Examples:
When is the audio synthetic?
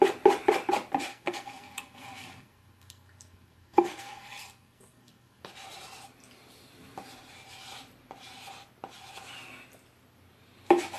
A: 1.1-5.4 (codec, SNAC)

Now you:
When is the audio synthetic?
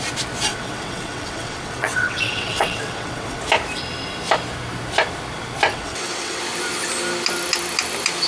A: 0.5-3.4 (vocoder, WaveNeXt); 5.7-6.4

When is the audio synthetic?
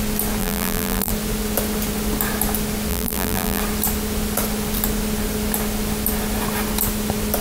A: 0.4-1.1 (vocoder, BigVGAN v2); 2.9-3.6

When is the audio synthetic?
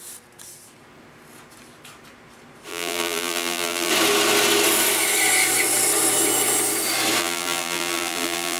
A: 2.7-3.9 (vocoder, BigVGAN v2); 7.2-8.6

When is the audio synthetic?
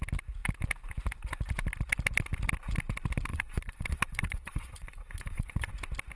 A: 3.3-5.7 (vocoder, WaveNeXt)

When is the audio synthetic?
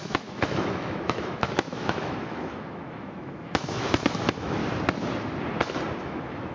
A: 0.0-4.6 (autoencoder, DAC-VAE); 6.0-6.5